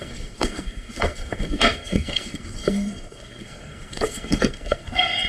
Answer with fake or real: fake